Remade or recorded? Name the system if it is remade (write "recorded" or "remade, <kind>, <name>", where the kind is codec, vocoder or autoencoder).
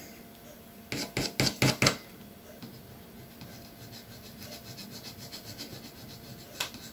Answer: recorded